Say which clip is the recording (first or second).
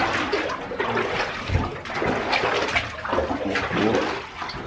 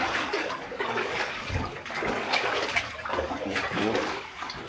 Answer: first